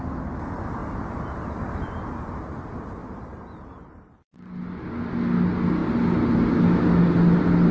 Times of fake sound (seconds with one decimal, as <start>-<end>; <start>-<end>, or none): none